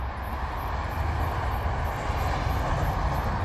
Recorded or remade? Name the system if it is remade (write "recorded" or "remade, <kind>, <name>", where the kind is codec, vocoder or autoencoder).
recorded